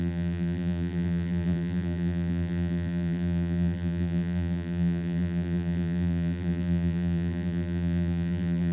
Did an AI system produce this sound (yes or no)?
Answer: yes